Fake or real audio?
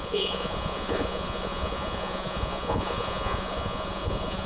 fake